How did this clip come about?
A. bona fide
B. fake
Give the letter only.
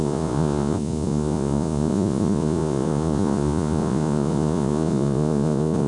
B